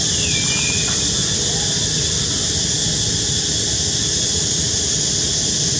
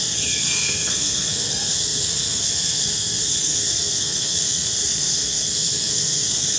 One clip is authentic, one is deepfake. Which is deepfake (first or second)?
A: second